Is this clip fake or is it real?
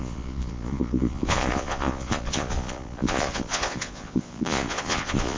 fake